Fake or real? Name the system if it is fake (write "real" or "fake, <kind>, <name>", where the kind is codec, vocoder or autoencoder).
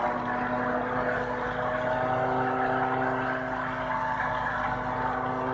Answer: real